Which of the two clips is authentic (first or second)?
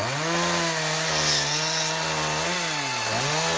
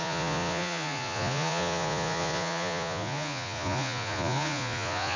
first